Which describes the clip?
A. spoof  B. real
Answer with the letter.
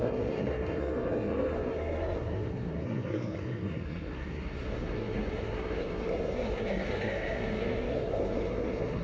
A